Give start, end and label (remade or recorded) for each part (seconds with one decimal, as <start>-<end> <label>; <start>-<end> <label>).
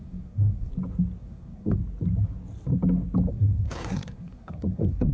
0.0-0.7 remade; 0.7-1.2 recorded; 1.2-1.8 remade; 1.8-3.3 recorded; 3.3-5.1 remade